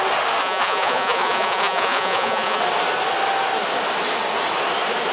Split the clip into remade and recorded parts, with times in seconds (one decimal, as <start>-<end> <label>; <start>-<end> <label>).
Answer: 0.0-0.4 recorded; 0.4-2.6 remade; 2.6-5.1 recorded